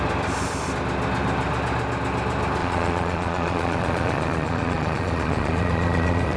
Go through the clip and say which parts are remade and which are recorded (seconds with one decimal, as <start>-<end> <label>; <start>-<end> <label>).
0.0-2.6 recorded; 2.6-6.4 remade